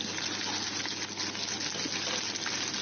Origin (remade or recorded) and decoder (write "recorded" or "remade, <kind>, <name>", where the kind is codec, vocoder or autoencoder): recorded